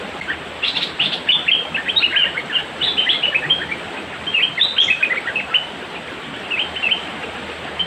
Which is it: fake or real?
fake